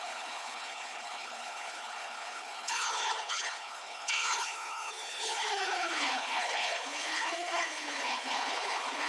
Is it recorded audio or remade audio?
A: remade